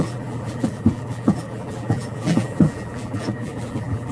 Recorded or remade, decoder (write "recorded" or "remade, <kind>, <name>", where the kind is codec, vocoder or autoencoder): remade, vocoder, BigVGAN v2